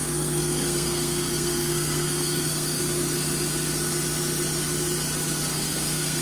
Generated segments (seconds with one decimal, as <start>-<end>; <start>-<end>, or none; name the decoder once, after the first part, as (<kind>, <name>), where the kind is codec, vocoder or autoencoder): 0.0-2.8 (codec, SNAC); 5.5-6.2